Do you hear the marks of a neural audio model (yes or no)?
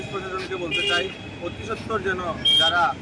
no